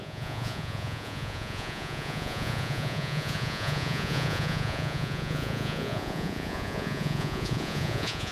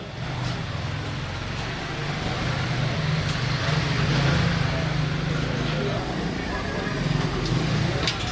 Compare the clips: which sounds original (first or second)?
second